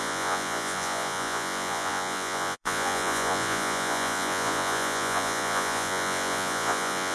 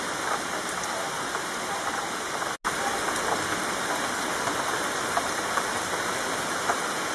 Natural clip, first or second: second